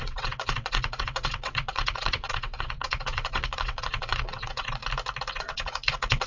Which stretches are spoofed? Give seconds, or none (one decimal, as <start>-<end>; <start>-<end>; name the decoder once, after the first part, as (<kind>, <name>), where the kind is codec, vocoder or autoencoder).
0.0-4.8 (vocoder, WaveNeXt); 5.3-6.3